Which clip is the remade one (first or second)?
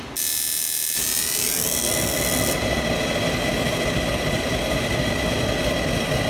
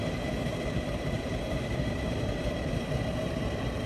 second